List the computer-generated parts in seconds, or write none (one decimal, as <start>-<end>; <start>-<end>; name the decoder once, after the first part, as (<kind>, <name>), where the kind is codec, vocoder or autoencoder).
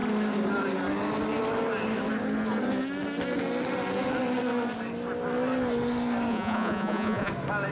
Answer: 6.3-7.3 (vocoder, Vocos)